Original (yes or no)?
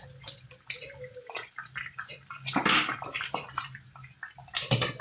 yes